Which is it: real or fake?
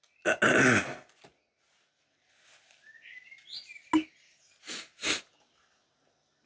real